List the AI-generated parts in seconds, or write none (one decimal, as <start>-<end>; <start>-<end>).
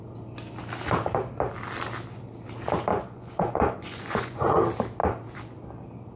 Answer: 2.9-4.6